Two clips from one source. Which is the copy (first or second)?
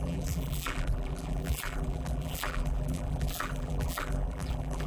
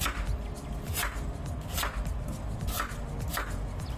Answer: first